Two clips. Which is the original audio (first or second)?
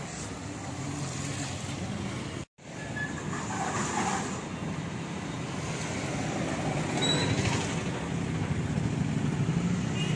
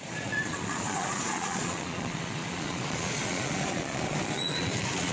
first